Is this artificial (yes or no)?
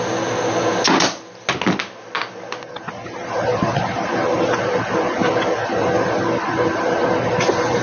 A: no